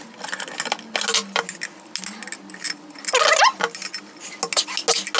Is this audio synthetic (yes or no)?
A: no